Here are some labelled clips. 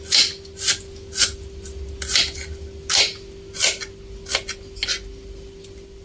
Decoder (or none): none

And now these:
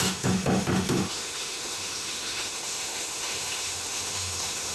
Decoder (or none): autoencoder, DAC-VAE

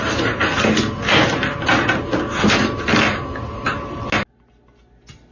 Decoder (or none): none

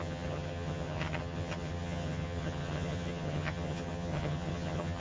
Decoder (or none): vocoder, HiFi-GAN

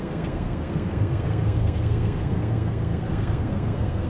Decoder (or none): codec, SNAC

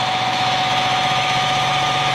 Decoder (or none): autoencoder, DAC-VAE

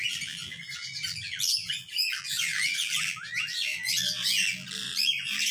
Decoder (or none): vocoder, BigVGAN v2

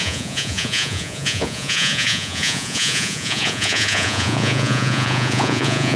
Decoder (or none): vocoder, Vocos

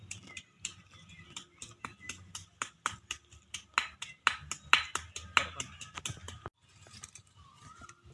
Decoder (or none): none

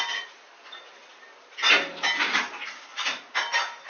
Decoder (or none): none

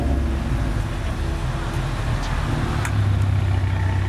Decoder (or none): none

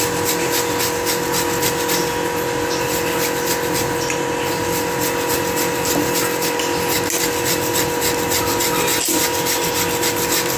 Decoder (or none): none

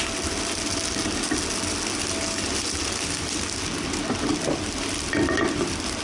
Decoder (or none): none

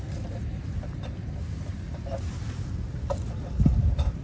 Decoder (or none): none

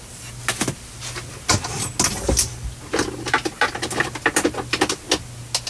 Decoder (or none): none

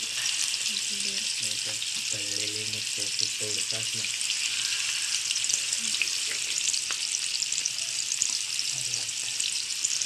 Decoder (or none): none